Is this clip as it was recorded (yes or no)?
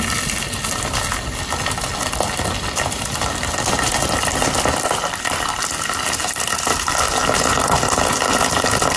yes